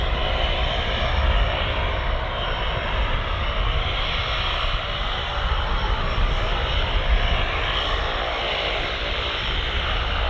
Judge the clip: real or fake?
real